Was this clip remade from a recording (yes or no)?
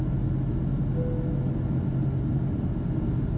no